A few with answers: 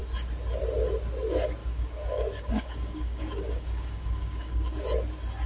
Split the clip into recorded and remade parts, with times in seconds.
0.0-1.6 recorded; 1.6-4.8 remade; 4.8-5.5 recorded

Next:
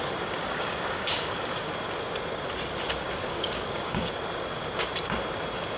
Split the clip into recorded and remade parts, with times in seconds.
0.0-0.4 recorded; 0.4-1.7 remade; 1.7-3.3 recorded; 3.3-4.1 remade; 4.1-5.8 recorded

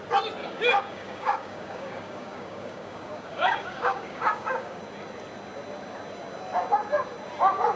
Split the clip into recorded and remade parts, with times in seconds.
0.0-0.4 recorded; 0.4-4.8 remade; 4.8-7.8 recorded